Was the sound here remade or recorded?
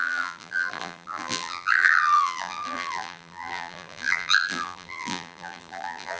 remade